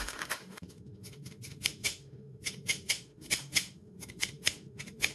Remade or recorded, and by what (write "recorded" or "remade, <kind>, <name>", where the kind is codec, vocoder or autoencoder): remade, autoencoder, DAC-VAE